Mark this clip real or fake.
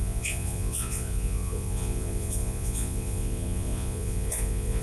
fake